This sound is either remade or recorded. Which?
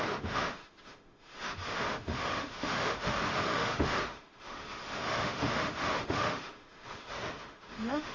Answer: remade